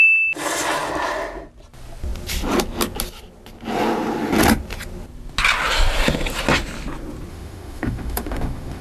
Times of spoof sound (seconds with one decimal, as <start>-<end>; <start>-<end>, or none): 7.3-8.8